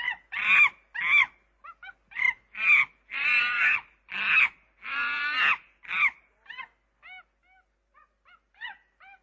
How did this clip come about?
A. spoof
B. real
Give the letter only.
B